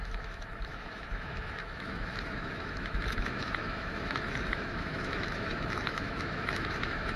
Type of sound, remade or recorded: remade